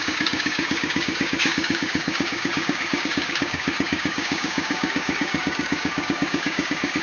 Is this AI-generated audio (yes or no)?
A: yes